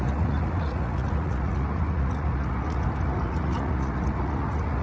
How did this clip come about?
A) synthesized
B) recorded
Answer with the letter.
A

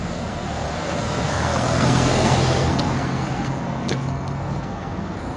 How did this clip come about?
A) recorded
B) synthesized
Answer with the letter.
B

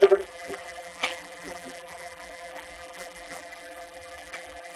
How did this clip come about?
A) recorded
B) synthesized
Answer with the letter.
B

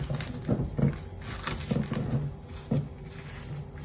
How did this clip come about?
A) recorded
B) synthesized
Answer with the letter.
A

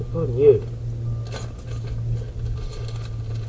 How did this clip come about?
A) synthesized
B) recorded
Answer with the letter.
B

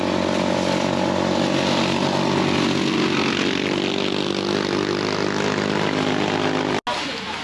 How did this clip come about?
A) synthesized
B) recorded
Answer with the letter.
B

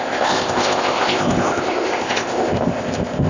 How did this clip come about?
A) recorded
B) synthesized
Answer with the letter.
B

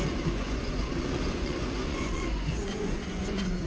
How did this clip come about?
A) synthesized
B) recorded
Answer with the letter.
A